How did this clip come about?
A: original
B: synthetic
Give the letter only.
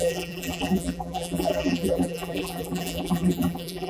B